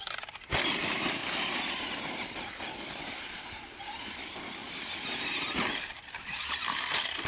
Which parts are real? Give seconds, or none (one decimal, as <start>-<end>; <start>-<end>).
0.0-7.3